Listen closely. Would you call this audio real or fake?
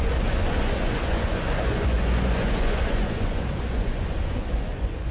fake